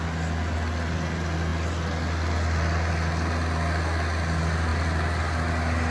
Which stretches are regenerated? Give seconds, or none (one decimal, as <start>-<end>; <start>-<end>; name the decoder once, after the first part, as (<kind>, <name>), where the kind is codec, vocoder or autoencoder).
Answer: none

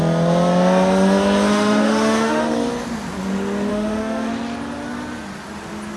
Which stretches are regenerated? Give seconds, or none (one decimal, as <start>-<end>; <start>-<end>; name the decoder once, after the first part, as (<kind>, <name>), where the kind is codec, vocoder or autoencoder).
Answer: 1.5-2.4 (autoencoder, DAC-VAE); 3.7-4.3

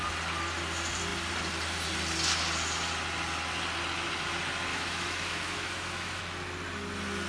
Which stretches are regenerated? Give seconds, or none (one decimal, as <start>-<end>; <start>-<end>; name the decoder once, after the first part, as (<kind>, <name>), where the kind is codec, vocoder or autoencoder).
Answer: 4.7-6.2 (autoencoder, DAC-VAE)

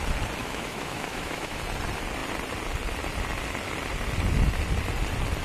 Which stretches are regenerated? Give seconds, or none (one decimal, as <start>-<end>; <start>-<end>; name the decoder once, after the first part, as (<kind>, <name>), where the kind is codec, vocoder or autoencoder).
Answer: 0.4-1.6 (autoencoder, DAC-VAE)

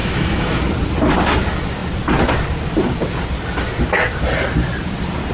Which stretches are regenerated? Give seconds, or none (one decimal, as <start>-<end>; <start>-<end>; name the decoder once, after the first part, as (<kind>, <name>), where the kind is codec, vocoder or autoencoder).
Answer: 0.0-0.6 (autoencoder, DAC-VAE)